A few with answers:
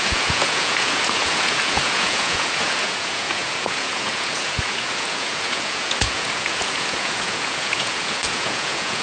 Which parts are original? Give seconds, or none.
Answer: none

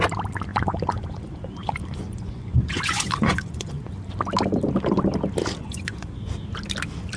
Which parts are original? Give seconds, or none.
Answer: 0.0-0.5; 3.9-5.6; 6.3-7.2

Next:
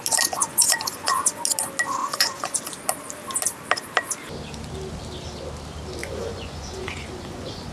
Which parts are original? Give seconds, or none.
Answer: 0.0-0.4; 1.4-2.0; 2.6-6.0